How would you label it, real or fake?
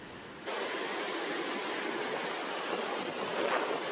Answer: real